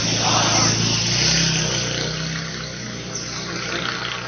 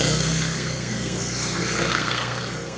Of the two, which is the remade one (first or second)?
second